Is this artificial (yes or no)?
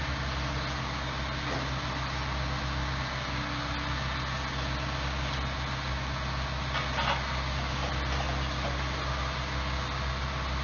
no